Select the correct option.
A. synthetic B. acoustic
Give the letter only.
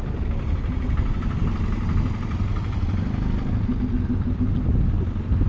B